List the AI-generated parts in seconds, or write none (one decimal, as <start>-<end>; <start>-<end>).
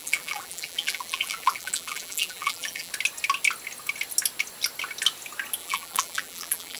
0.0-2.9; 5.6-6.8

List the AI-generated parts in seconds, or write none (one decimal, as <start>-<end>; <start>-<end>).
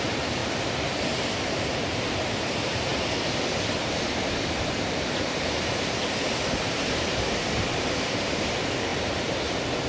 0.0-0.4; 1.1-2.9; 3.7-9.9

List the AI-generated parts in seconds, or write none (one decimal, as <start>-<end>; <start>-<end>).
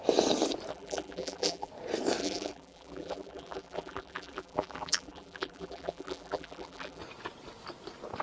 0.7-1.7; 2.2-7.0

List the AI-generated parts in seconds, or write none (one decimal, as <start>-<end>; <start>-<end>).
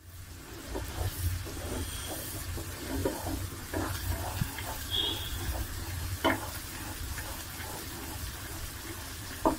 none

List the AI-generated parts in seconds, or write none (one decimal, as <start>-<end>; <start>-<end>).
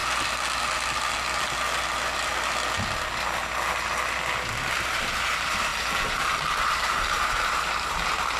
4.8-8.4